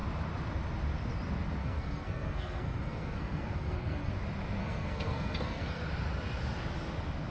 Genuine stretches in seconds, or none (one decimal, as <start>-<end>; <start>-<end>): 0.0-1.6; 4.1-4.6; 5.8-7.3